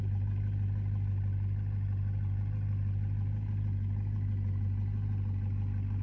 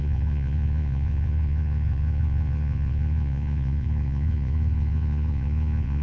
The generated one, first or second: second